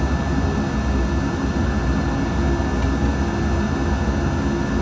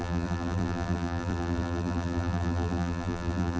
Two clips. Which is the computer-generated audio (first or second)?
second